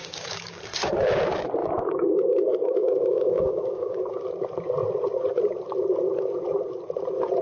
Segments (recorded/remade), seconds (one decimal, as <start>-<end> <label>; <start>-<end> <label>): 0.0-0.9 remade; 0.9-1.6 recorded; 1.6-4.0 remade; 4.0-7.4 recorded